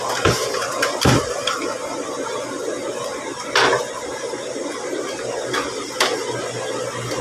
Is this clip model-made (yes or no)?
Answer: yes